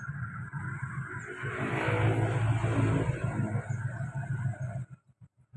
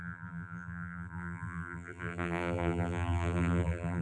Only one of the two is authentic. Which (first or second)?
first